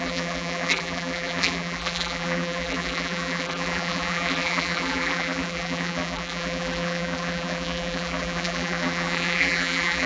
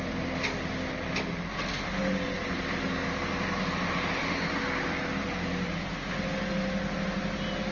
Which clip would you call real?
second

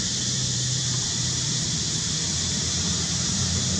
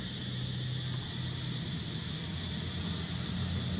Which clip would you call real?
second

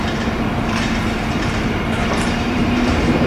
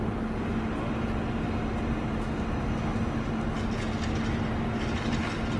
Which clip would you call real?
second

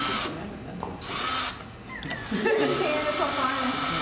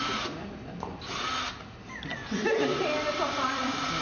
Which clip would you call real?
first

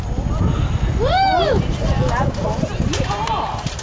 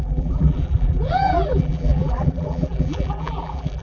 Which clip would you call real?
first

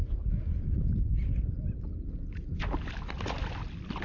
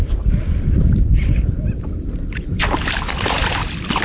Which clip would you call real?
first